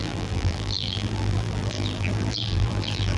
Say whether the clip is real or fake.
fake